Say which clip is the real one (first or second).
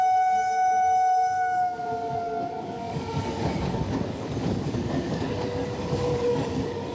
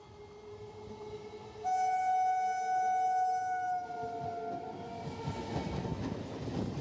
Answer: second